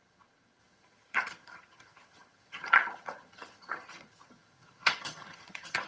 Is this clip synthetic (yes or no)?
yes